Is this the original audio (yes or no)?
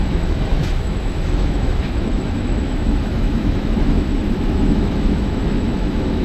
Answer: no